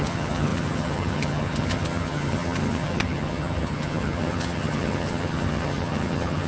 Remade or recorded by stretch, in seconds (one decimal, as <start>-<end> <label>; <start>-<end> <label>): 0.0-6.5 remade